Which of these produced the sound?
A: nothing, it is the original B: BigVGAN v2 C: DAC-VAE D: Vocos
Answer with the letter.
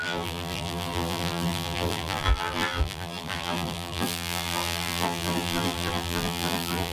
B